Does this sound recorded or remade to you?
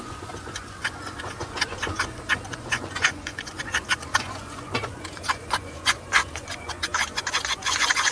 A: remade